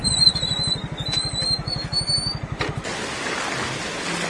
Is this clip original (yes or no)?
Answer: yes